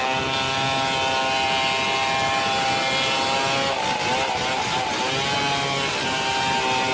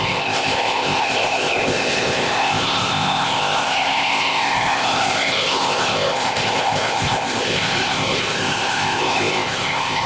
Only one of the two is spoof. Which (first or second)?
second